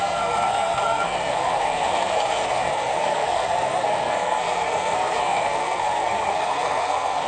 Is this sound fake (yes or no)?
yes